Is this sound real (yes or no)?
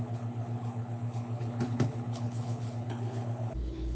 no